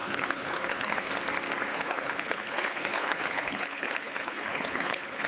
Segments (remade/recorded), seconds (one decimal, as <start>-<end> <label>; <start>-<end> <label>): 0.0-1.1 remade; 1.1-1.7 recorded; 1.7-5.3 remade